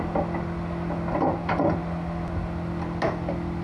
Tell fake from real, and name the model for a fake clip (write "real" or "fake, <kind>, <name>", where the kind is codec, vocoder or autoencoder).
real